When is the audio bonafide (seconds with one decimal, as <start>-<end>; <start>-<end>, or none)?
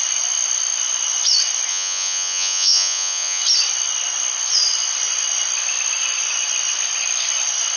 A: 0.0-1.7; 3.4-7.8